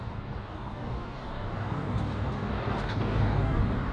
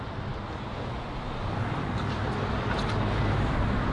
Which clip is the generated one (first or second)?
first